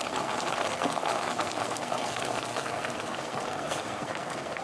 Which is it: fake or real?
fake